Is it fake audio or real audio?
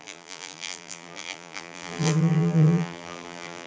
fake